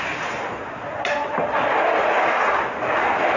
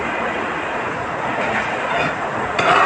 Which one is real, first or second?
first